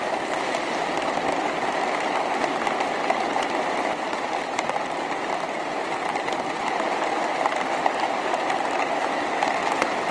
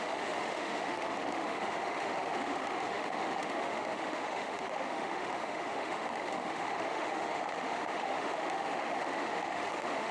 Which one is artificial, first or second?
second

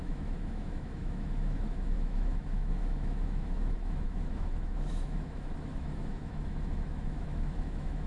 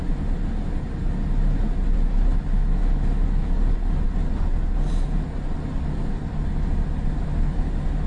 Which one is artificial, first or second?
first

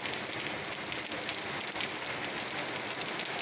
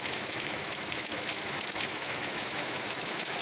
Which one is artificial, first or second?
second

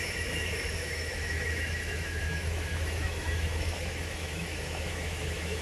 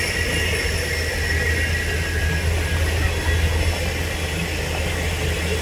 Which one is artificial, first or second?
first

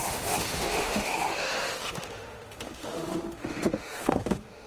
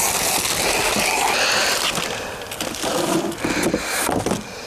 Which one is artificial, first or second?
first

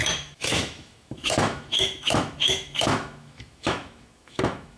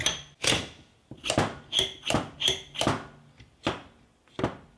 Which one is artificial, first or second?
first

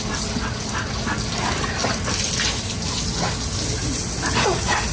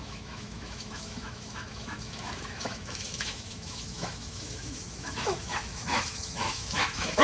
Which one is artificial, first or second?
second